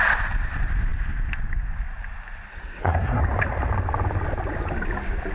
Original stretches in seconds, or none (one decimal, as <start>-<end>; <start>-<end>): 0.0-2.5; 3.2-5.3